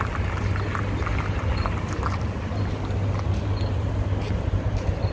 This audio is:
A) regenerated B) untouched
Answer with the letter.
B